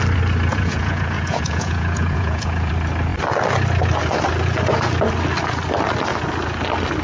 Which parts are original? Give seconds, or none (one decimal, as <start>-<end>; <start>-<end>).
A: 0.0-0.5; 2.7-7.0